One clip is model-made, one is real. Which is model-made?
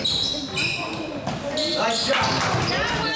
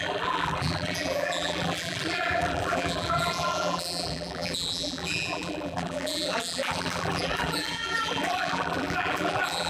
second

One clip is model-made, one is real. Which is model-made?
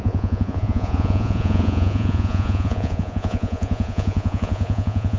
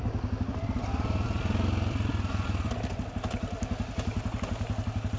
first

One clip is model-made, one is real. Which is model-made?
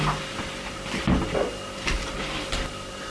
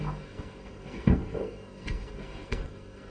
second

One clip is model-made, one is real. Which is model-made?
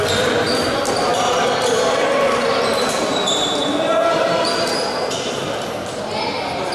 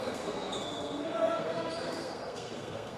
second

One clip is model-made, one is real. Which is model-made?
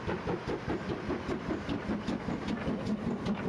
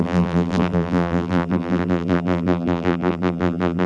second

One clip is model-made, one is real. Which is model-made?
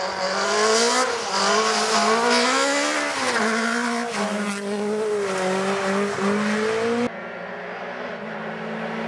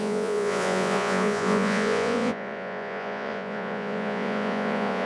second